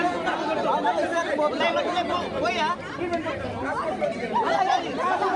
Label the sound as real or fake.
real